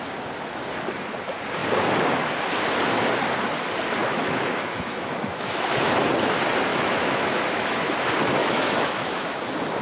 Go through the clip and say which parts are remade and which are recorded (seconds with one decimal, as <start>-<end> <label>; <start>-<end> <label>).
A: 0.0-4.0 recorded; 4.0-5.9 remade; 5.9-6.7 recorded; 6.7-7.9 remade; 7.9-8.4 recorded; 8.4-9.4 remade; 9.4-9.8 recorded